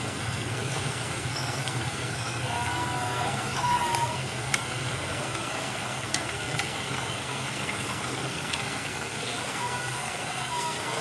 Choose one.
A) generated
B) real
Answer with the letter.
A